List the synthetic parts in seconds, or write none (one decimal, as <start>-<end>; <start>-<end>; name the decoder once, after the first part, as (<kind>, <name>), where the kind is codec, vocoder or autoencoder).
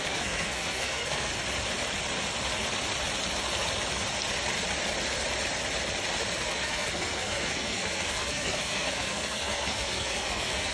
0.0-1.3 (codec, SNAC); 6.3-10.7